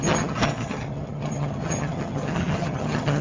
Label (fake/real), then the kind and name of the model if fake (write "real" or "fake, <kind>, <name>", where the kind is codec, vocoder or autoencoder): fake, vocoder, HiFi-GAN